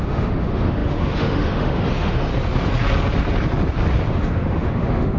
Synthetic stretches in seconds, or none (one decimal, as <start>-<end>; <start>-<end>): 0.0-2.3; 4.1-5.2